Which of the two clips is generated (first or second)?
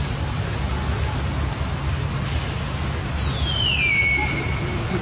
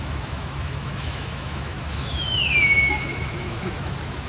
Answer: second